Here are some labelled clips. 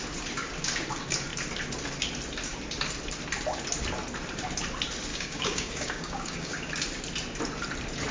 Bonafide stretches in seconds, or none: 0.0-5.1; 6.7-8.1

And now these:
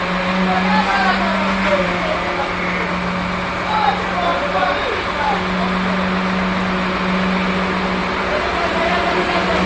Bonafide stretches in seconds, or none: 0.0-9.7